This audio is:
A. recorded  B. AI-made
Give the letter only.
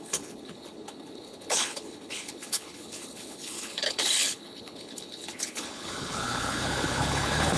B